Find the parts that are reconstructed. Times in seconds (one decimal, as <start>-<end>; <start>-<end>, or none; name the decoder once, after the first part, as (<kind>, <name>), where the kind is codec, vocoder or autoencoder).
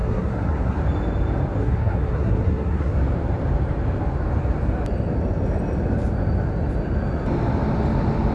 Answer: 0.0-0.8 (codec, SNAC); 1.6-2.9